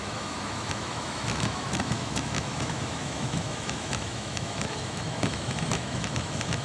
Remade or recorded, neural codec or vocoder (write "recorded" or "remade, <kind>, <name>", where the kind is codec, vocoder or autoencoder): remade, autoencoder, DAC-VAE